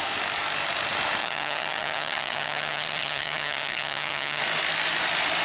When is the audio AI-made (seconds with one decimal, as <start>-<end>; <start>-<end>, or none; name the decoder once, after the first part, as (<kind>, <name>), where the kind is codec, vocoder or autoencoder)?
1.2-4.4 (vocoder, HiFi-GAN)